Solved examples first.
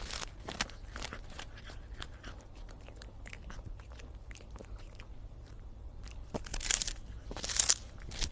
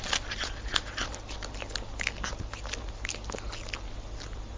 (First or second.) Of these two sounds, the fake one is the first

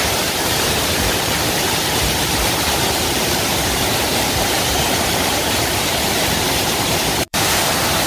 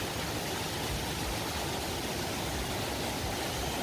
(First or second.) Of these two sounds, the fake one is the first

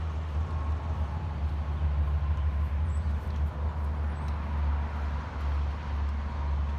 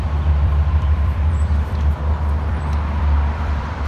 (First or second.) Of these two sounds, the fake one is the second